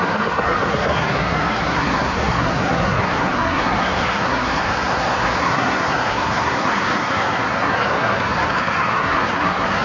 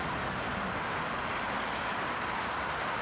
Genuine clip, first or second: second